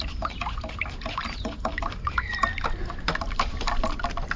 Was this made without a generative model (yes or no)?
yes